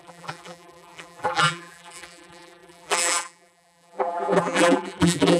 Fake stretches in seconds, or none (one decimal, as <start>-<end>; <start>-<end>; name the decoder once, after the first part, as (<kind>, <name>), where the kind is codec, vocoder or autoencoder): 0.0-5.4 (vocoder, BigVGAN v2)